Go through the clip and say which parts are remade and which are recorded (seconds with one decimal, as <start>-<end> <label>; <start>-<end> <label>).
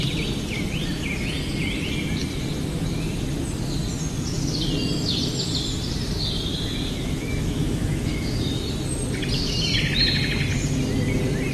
0.0-6.5 recorded; 6.5-8.7 remade; 8.7-11.5 recorded